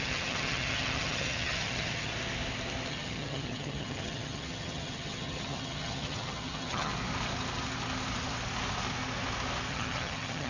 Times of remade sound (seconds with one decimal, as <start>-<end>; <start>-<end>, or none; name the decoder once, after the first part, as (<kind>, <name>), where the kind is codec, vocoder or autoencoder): 0.0-2.1 (vocoder, HiFi-GAN); 2.9-6.9; 9.7-10.5